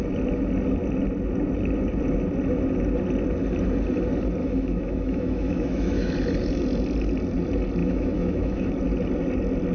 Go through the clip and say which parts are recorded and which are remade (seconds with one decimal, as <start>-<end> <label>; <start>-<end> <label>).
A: 0.0-4.4 recorded; 4.4-6.1 remade; 6.1-7.8 recorded; 7.8-8.7 remade; 8.7-9.7 recorded